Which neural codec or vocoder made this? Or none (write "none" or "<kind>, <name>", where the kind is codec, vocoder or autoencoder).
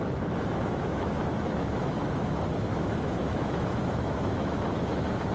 autoencoder, DAC-VAE